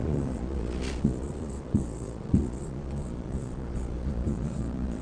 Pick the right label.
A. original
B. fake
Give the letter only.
B